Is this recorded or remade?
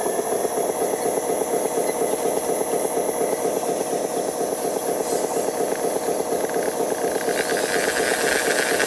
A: recorded